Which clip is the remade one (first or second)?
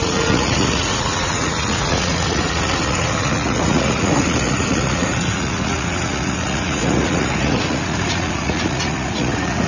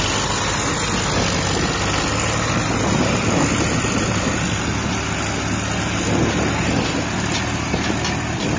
first